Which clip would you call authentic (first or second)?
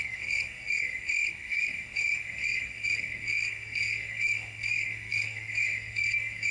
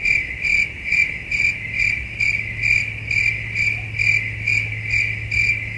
second